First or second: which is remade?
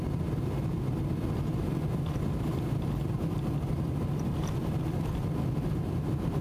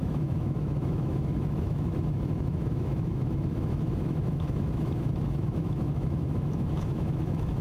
second